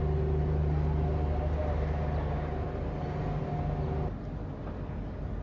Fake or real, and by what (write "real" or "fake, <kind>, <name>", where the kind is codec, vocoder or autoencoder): real